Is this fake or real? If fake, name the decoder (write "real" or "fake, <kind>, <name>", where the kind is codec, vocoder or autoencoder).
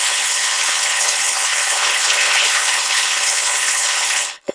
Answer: fake, codec, HILCodec